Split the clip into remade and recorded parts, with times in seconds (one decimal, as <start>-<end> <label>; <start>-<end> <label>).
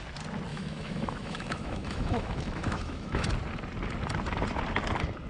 0.0-0.5 recorded; 0.5-3.3 remade; 3.3-5.3 recorded